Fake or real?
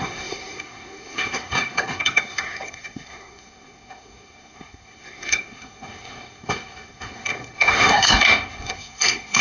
fake